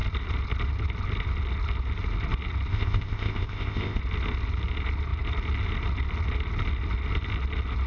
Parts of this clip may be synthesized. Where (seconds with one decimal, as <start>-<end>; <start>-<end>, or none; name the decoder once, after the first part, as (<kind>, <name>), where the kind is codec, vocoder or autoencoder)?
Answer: 2.7-4.0 (codec, ZipCodec)